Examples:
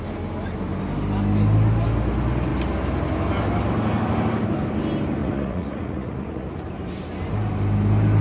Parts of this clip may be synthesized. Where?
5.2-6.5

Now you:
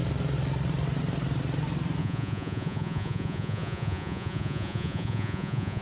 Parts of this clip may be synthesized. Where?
2.0-5.8

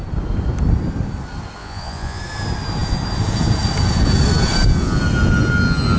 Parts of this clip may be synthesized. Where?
1.6-2.2

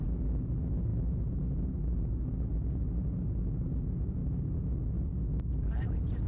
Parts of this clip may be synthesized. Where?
none